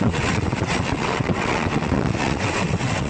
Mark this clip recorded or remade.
remade